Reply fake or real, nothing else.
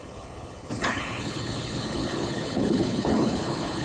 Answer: fake